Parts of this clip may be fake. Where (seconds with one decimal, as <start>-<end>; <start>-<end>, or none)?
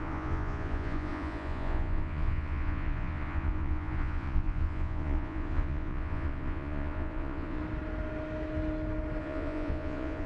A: 0.0-7.6; 9.2-10.3